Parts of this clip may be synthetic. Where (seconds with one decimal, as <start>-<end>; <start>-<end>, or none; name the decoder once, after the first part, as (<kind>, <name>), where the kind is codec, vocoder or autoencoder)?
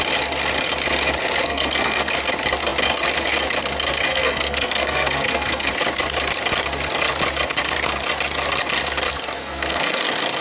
1.4-2.1 (codec, SNAC); 4.1-5.7; 9.4-10.0